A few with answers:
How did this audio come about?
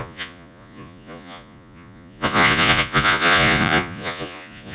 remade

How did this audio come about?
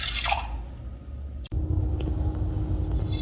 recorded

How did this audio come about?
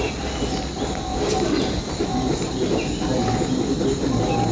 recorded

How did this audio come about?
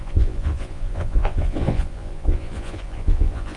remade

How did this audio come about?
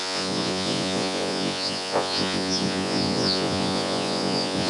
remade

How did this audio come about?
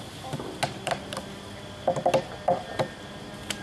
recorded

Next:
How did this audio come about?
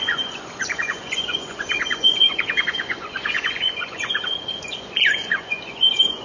remade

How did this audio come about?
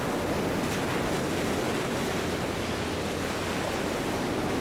recorded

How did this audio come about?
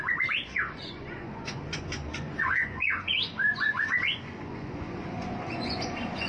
remade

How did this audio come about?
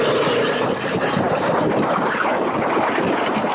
recorded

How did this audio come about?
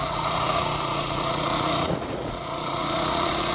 remade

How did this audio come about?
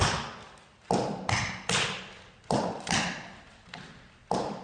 recorded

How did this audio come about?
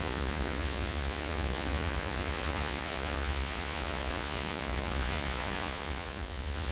remade